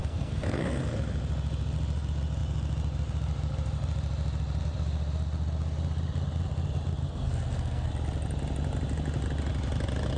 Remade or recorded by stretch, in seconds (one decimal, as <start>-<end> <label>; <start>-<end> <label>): 0.0-0.9 remade; 0.9-7.0 recorded; 7.0-7.9 remade; 7.9-10.2 recorded